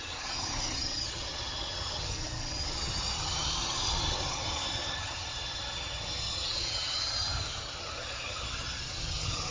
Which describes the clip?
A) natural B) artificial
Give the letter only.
B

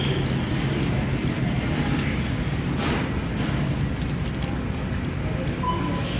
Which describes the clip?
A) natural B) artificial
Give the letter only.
A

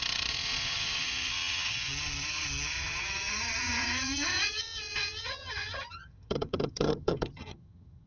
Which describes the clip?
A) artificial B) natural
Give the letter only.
A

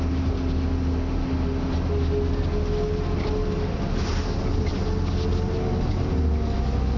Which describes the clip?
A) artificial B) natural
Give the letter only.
B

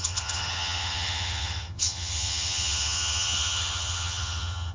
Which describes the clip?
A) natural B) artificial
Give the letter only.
B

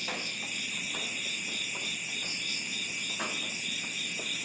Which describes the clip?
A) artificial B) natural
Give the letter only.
B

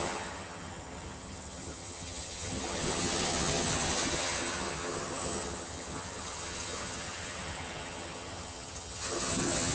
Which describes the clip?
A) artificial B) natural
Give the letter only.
A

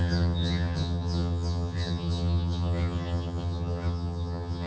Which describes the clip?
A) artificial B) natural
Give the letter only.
A